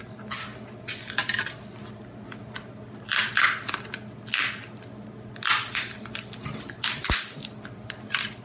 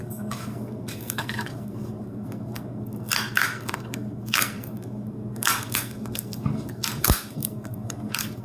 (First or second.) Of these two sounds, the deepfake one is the second